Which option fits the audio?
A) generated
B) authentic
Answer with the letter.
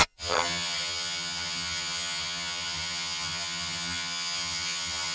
A